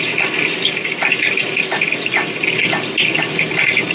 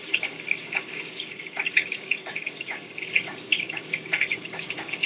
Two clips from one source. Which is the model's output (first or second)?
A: second